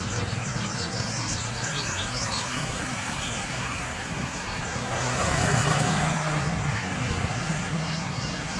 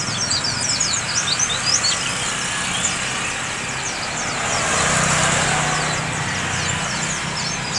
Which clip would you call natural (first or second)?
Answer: second